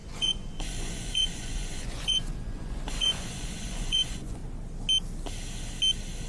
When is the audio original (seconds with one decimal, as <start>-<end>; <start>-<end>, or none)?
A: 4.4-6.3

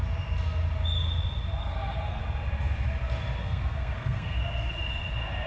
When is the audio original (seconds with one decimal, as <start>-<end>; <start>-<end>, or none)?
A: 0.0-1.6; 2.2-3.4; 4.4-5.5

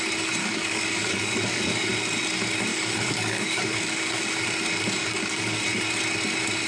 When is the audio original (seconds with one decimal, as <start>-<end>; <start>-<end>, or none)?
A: 0.0-0.4; 1.9-2.7; 4.3-5.0; 5.6-6.7

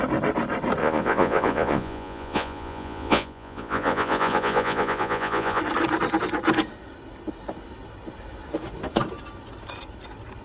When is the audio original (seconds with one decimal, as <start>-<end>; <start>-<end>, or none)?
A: 0.0-0.8; 5.6-10.4

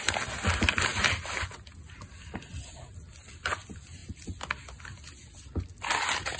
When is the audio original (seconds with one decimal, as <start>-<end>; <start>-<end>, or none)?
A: 0.0-6.4

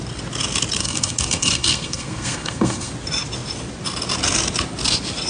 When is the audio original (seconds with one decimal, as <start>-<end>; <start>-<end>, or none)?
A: 0.0-0.8; 2.9-5.3

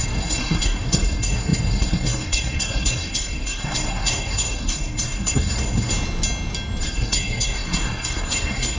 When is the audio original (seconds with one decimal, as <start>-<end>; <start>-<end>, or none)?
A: 5.9-6.8